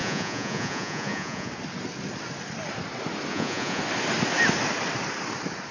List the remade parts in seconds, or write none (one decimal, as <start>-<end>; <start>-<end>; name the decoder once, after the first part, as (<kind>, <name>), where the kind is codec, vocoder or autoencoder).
0.0-1.5 (vocoder, Vocos); 3.3-3.8